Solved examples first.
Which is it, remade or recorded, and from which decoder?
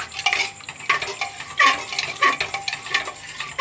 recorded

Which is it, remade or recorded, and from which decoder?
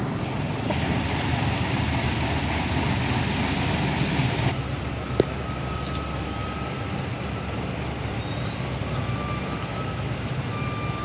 recorded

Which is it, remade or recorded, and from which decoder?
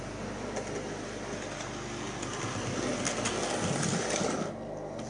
recorded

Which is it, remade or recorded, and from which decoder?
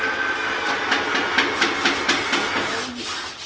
recorded